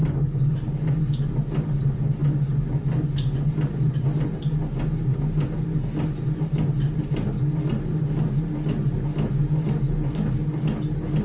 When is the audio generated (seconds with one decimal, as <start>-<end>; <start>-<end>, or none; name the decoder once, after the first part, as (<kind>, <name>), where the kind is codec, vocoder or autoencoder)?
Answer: none